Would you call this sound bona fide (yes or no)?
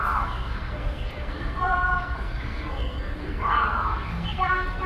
no